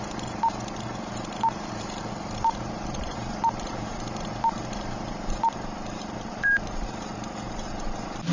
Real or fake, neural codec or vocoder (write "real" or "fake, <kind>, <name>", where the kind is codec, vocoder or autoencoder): fake, vocoder, BigVGAN v2